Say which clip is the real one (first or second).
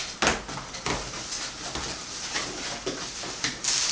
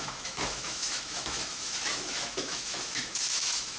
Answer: first